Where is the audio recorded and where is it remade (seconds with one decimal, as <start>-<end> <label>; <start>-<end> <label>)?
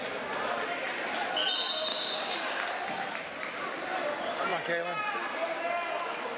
0.0-1.9 recorded; 1.9-2.7 remade; 2.7-6.4 recorded